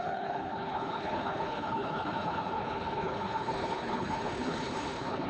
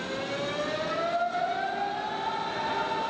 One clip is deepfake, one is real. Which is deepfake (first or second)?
first